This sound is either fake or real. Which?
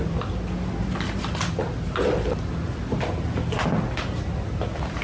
real